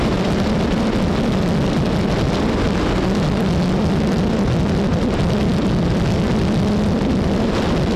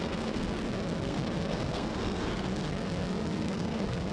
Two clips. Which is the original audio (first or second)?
first